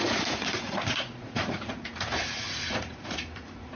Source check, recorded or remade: remade